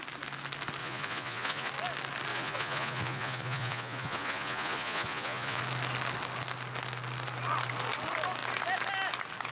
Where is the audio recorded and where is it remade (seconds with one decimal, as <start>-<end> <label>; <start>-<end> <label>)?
0.0-0.8 recorded; 0.8-1.7 remade; 1.7-2.3 recorded; 2.3-5.6 remade; 5.6-9.5 recorded